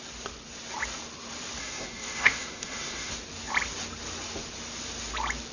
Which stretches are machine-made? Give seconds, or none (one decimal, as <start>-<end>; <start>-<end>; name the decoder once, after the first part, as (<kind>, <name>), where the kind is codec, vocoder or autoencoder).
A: 1.6-3.1 (codec, SNAC)